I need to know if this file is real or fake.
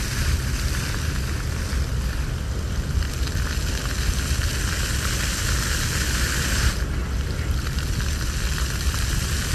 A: real